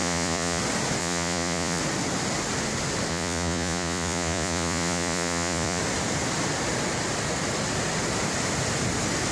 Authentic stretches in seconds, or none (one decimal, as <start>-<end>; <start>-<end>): 0.6-1.0; 1.8-3.1; 5.8-9.3